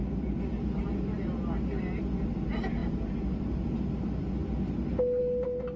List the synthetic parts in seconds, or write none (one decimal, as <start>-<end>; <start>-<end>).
none